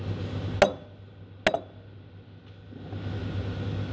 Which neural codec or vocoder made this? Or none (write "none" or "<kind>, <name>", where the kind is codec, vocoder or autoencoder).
none